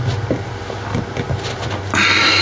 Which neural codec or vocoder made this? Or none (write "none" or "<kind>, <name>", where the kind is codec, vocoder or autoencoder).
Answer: none